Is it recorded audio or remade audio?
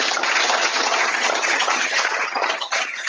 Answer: remade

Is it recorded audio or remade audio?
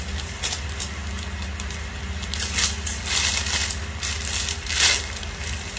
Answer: recorded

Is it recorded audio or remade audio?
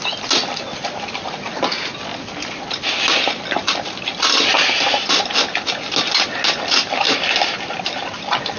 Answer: recorded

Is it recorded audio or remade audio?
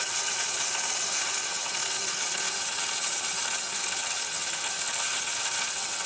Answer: remade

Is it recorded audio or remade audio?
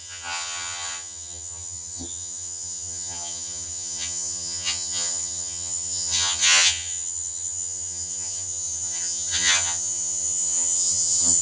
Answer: remade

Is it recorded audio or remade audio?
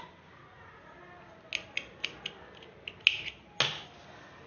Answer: recorded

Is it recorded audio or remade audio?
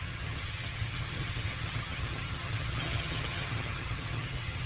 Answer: remade